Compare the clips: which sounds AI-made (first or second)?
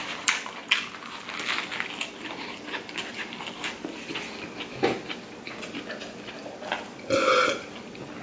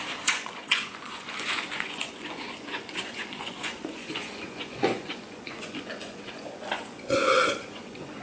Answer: second